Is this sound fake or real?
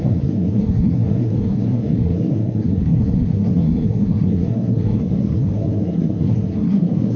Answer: fake